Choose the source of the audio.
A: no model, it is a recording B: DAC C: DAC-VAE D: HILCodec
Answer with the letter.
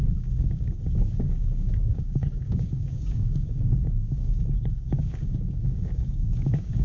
B